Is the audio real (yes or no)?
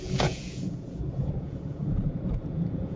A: no